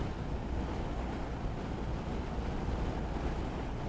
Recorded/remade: recorded